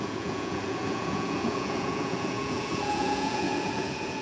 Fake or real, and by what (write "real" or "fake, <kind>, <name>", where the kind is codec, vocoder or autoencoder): fake, vocoder, Vocos